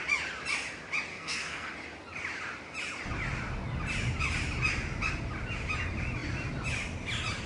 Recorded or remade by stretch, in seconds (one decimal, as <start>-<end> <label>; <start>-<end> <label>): 0.0-1.1 recorded; 1.1-1.7 remade; 1.7-7.5 recorded